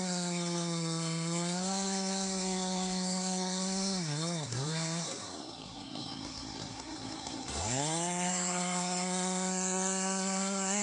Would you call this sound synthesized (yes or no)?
yes